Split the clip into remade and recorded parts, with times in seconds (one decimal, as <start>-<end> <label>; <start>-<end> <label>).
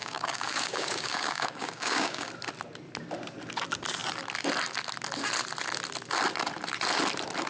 0.0-2.3 remade; 2.3-7.5 recorded